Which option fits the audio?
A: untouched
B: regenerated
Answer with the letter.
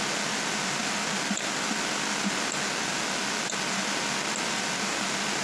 A